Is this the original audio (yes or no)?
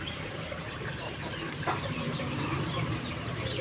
no